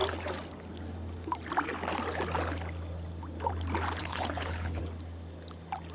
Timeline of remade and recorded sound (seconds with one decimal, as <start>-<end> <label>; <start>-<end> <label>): 0.0-4.0 recorded; 4.0-4.8 remade; 4.8-5.9 recorded